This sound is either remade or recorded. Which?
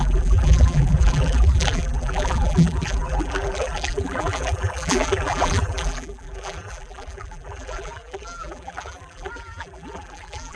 remade